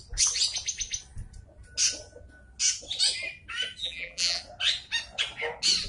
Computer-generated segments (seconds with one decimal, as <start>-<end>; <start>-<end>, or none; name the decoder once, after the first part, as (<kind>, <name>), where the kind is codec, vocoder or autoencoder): 3.8-4.4 (vocoder, BigVGAN v2)